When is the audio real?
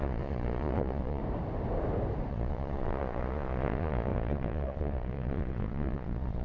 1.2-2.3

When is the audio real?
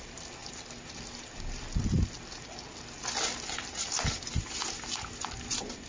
0.0-5.9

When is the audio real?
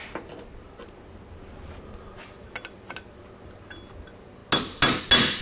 0.0-5.4